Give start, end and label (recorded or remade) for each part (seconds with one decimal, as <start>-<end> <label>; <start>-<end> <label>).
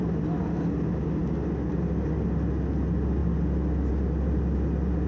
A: 0.0-5.1 recorded